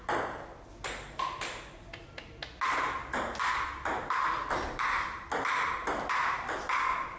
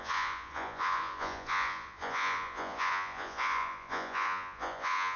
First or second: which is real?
first